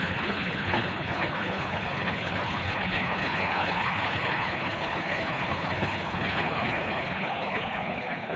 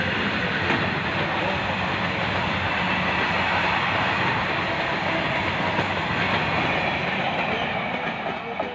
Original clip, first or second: second